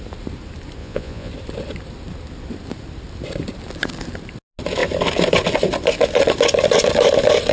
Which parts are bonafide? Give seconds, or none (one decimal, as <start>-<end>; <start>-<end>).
0.0-0.8; 1.3-7.5